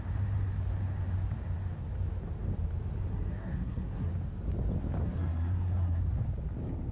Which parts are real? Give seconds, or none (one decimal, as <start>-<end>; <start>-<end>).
0.0-3.1; 4.1-5.0; 6.0-6.9